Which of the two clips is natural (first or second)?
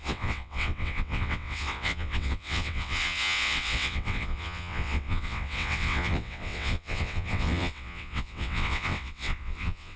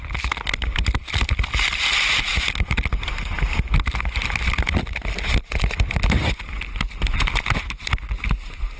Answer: second